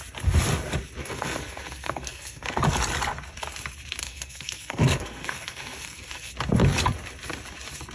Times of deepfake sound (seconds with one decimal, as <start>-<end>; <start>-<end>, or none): 1.0-2.6; 4.0-6.3